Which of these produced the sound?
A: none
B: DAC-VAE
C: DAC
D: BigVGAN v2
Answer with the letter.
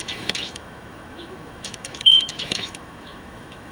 B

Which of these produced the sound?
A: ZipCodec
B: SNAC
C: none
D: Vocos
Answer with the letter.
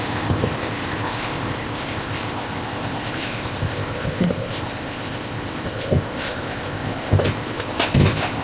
A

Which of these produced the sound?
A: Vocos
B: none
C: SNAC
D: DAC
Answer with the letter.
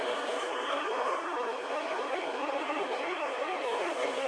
C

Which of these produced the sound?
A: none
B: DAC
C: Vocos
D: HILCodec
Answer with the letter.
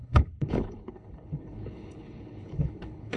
D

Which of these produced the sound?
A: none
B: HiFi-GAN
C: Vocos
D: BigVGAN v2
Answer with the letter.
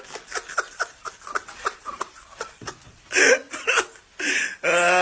A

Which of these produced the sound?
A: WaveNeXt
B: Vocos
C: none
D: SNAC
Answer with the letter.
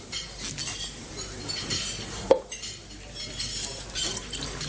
C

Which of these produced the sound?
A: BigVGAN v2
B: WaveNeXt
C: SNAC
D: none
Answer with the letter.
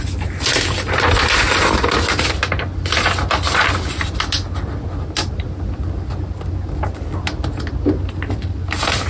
D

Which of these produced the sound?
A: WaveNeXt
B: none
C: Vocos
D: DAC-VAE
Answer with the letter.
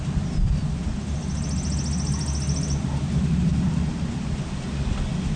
B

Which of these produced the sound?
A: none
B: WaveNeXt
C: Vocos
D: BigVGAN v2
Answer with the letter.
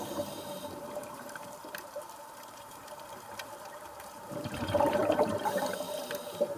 D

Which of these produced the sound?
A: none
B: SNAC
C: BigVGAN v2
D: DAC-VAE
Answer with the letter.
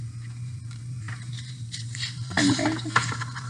C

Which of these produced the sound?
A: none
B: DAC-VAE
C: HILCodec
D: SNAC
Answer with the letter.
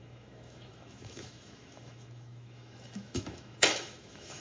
B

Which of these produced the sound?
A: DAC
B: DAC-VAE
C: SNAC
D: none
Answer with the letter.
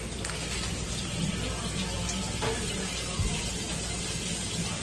D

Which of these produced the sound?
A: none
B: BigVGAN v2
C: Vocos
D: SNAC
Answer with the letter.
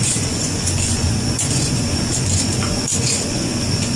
C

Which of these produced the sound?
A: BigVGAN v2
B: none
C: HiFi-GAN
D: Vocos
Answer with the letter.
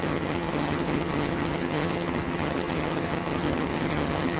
C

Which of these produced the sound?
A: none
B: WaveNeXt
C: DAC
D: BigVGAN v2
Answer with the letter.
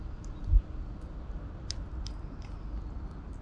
A